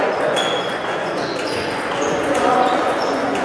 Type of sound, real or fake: fake